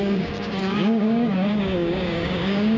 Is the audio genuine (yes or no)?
no